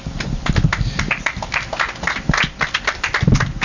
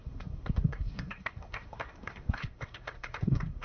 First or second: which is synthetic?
second